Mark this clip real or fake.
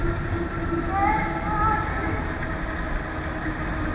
real